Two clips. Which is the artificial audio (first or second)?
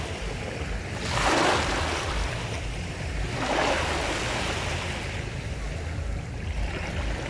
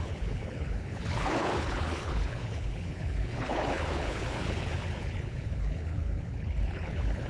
second